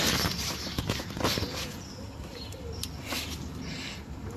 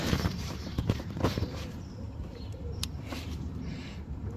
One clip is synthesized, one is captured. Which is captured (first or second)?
first